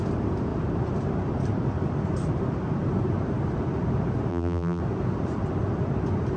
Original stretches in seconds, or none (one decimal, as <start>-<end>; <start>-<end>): 0.0-4.3; 4.8-6.4